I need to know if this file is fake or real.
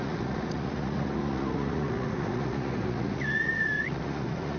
fake